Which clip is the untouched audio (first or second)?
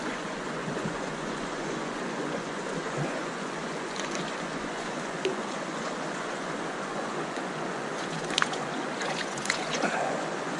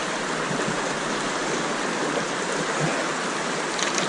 second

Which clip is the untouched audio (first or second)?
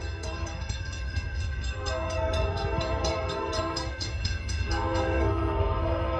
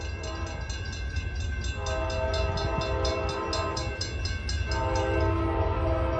second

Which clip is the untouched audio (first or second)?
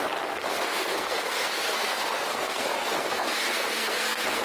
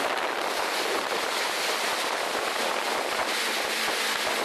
second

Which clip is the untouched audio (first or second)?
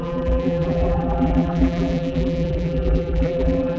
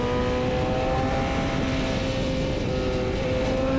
second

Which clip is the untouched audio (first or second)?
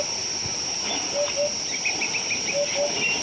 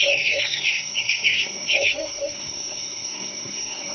first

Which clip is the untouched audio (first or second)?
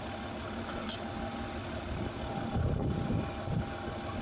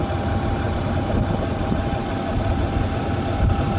first